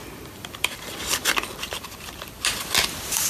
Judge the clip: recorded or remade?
recorded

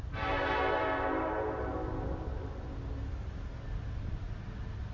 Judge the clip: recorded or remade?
recorded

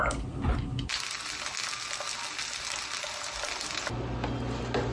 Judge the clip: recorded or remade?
recorded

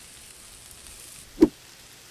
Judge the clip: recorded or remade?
recorded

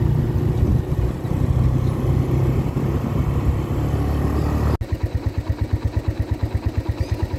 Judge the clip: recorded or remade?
recorded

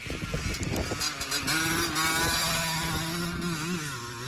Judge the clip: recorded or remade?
recorded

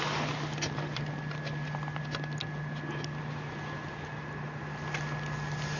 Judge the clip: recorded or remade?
recorded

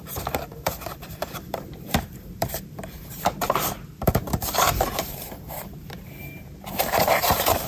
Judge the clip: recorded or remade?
remade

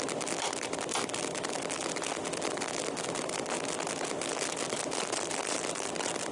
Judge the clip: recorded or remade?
recorded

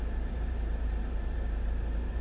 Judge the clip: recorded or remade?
remade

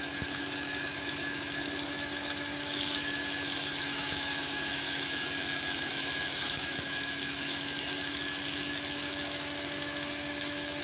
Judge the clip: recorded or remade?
remade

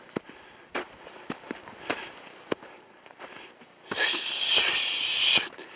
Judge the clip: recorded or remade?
recorded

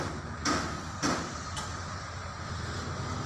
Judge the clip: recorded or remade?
recorded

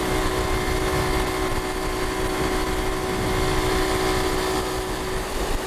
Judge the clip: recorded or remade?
recorded